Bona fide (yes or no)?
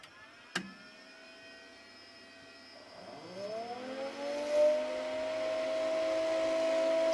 yes